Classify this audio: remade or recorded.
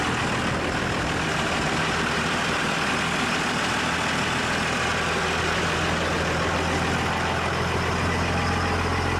recorded